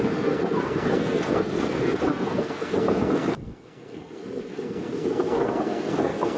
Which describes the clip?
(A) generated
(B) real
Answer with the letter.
A